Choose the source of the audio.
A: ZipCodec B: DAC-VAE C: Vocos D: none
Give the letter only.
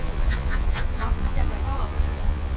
C